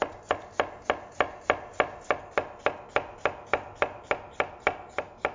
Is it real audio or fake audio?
real